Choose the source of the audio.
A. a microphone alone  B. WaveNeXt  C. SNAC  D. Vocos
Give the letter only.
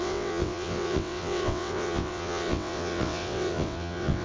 B